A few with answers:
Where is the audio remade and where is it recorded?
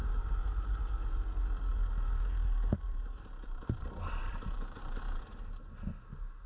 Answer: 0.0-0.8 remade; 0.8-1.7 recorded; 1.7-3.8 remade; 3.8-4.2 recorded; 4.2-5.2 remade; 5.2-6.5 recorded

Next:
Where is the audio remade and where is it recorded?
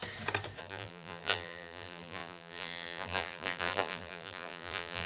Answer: 0.0-0.6 recorded; 0.6-5.1 remade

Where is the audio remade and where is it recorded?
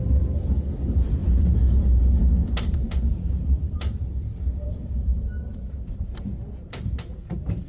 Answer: 0.0-3.1 recorded; 3.1-4.0 remade; 4.0-5.1 recorded; 5.1-6.8 remade; 6.8-7.7 recorded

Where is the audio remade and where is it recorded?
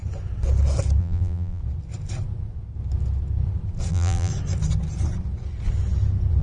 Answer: 0.0-1.0 recorded; 1.0-1.6 remade; 1.6-3.9 recorded; 3.9-4.3 remade; 4.3-6.4 recorded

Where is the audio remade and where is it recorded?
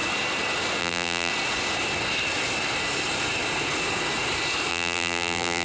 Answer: 0.0-0.8 recorded; 0.8-1.3 remade; 1.3-4.7 recorded; 4.7-5.6 remade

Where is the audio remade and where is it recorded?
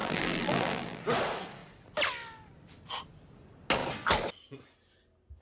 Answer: 0.0-1.0 remade; 1.0-5.4 recorded